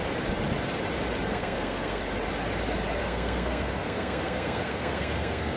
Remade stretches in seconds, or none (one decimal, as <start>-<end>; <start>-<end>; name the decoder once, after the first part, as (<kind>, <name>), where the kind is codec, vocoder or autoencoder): 1.3-2.0 (codec, SNAC); 3.0-5.6